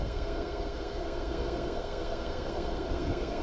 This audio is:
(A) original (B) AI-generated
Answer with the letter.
B